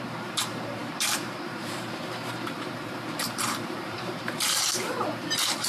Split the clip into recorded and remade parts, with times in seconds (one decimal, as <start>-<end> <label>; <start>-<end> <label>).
0.0-5.7 remade